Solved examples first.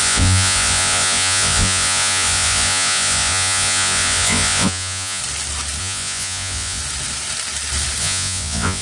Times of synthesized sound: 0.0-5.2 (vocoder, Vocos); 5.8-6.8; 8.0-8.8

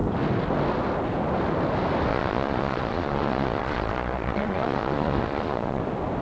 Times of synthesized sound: 2.1-5.8 (vocoder, Vocos)

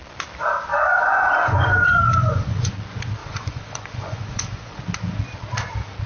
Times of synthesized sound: 0.7-2.7 (vocoder, Vocos); 3.2-4.8

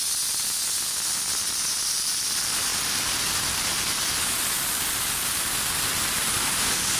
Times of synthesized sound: none